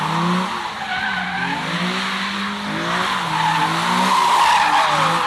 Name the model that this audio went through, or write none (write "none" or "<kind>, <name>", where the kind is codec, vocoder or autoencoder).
none